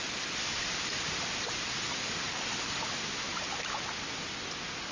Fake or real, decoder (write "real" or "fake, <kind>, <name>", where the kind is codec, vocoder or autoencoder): real